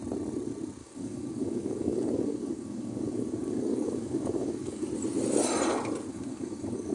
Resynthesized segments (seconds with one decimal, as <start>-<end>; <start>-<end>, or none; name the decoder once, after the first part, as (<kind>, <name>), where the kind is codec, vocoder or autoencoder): 0.8-4.9 (codec, DAC); 6.1-6.9